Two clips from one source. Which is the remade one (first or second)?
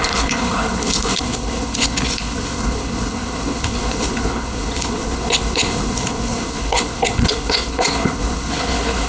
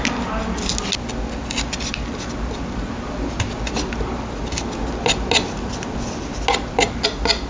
first